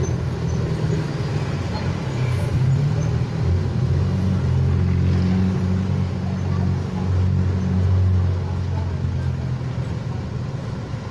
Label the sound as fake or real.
real